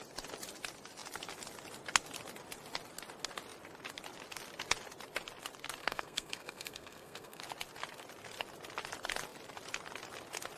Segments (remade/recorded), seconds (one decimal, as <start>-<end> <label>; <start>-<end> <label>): 0.0-5.8 recorded; 5.8-7.4 remade; 7.4-10.6 recorded